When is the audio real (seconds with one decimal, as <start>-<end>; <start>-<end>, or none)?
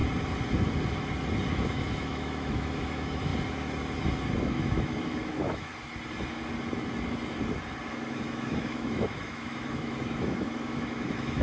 0.0-1.5; 3.3-4.4; 5.7-7.9